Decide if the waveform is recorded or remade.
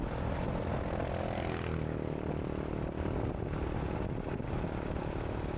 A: recorded